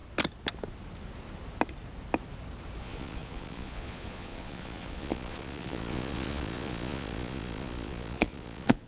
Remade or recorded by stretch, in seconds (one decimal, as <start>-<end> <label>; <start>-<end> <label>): 0.0-2.8 recorded; 2.8-8.9 remade